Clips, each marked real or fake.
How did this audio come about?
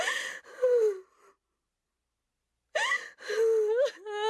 real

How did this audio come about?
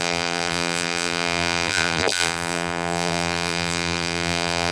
fake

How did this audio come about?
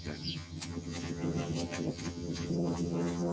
fake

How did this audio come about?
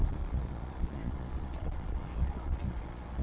fake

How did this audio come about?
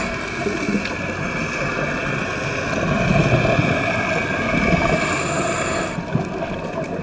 real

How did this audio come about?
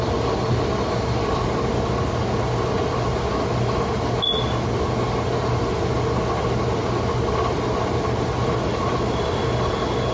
real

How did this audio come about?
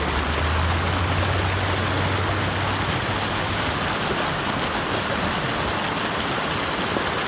real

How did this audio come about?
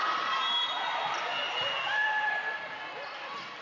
real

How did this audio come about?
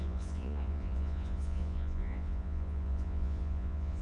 fake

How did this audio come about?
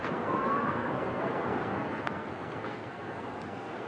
fake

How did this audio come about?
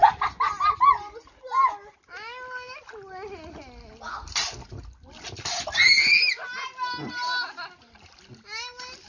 real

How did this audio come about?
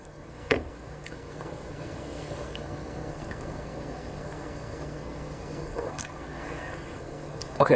fake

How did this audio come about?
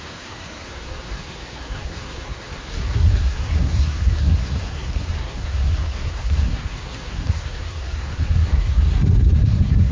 fake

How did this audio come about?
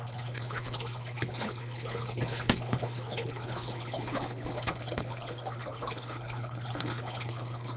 fake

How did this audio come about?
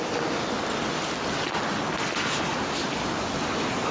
real